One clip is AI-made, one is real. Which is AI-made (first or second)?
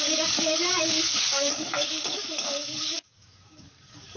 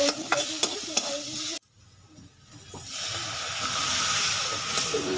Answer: first